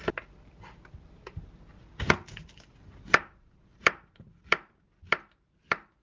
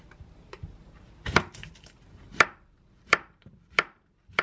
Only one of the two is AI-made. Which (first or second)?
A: second